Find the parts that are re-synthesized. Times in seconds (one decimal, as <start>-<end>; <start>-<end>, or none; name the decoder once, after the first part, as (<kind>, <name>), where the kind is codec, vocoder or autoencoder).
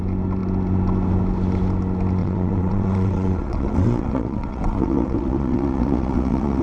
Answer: 2.2-6.6 (vocoder, WaveNeXt)